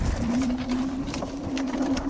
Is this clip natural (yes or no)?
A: no